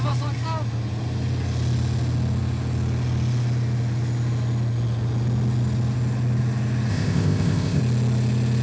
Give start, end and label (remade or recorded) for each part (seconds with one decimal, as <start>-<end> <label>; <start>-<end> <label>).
0.0-6.9 recorded; 6.9-7.8 remade; 7.8-8.6 recorded